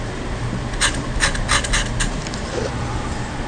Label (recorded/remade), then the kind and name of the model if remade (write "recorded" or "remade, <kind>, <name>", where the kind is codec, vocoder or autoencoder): recorded